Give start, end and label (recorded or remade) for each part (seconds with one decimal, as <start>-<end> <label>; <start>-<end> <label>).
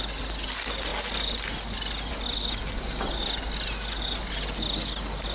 0.0-5.3 recorded